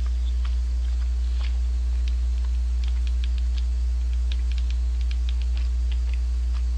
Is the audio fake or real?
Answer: real